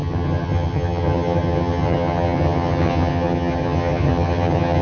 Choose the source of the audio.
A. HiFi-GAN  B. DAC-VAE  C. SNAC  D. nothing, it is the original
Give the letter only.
A